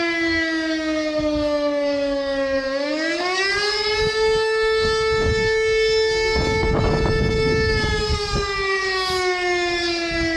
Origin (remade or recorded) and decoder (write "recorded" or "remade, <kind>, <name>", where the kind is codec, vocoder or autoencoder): remade, codec, DAC